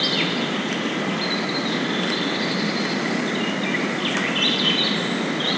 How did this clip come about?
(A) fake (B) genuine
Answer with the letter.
B